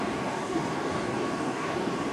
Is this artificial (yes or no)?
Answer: yes